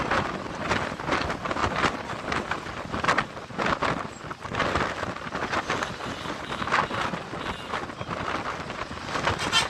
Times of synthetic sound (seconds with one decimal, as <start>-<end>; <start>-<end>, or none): none